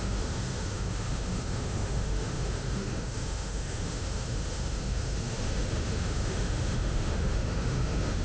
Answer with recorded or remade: remade